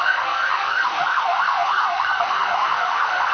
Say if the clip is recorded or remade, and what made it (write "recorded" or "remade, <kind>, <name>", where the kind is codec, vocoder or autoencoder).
remade, codec, SNAC